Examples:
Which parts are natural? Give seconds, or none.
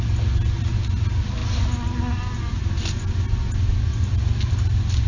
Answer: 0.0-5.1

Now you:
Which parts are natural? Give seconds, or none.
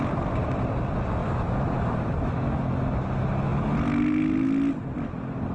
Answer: 0.0-1.2; 2.9-5.5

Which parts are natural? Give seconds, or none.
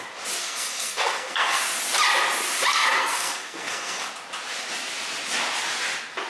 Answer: 0.0-0.4; 1.6-2.7; 4.1-6.3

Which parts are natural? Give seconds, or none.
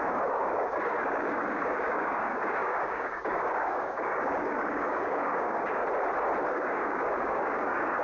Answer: 5.8-6.5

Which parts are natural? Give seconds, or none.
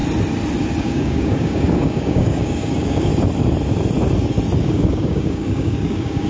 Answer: 0.0-0.8; 3.1-4.6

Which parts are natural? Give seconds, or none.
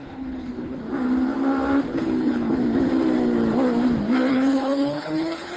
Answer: 0.8-1.9; 2.6-4.3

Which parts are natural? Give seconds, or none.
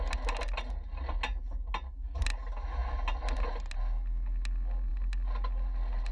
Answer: 0.0-6.1